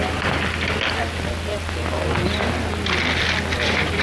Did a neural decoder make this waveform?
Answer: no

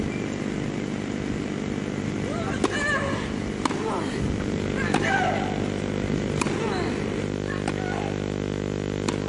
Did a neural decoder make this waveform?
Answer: no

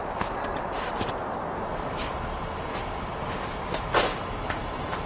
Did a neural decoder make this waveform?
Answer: no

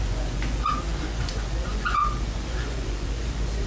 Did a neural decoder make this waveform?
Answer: yes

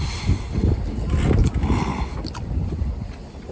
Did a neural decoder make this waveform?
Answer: no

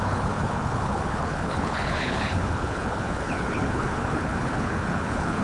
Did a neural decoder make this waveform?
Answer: yes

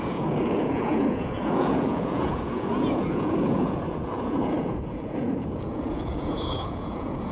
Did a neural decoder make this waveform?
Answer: yes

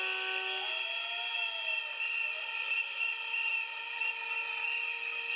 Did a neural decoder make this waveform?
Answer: no